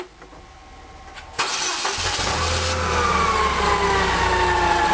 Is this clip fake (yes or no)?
no